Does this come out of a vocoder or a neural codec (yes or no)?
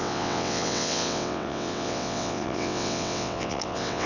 yes